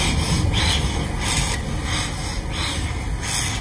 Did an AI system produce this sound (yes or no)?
no